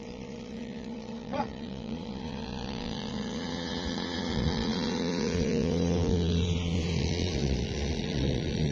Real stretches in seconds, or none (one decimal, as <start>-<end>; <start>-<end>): none